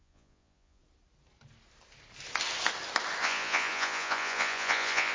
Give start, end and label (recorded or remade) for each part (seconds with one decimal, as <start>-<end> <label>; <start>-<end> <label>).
0.0-0.8 remade; 0.8-3.2 recorded; 3.2-5.1 remade